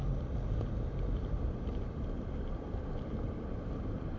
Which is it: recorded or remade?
recorded